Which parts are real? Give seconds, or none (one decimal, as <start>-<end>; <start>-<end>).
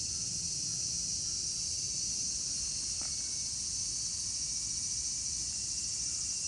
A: 0.0-6.5